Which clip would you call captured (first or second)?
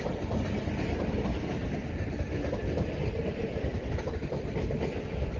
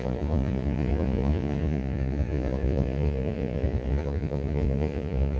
first